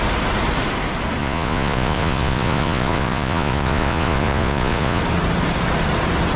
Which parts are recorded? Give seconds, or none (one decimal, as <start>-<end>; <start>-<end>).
0.0-1.2; 5.0-6.4